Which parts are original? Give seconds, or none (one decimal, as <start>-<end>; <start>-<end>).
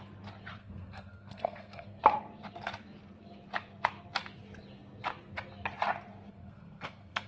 0.0-0.6; 2.0-6.3